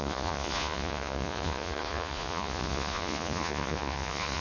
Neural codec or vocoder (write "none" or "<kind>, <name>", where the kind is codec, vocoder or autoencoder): vocoder, Vocos